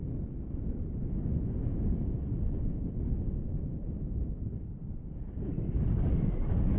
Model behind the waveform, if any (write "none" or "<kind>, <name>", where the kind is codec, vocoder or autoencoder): none